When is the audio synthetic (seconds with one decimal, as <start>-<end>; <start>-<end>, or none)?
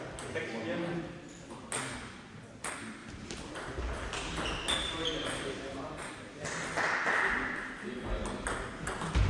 3.0-3.7; 4.8-6.1